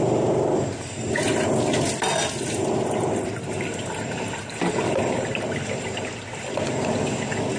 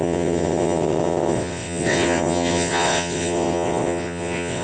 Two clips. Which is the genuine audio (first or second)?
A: first